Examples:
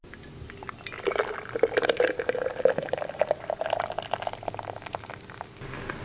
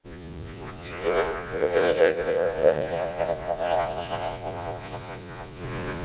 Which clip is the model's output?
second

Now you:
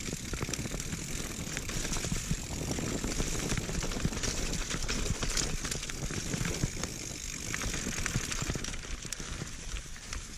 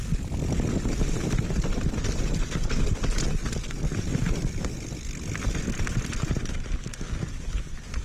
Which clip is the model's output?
first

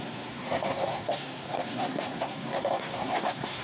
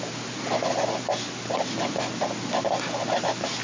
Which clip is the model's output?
first